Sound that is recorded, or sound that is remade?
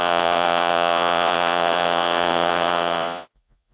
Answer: remade